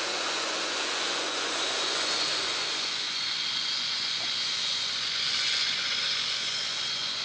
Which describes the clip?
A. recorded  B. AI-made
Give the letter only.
B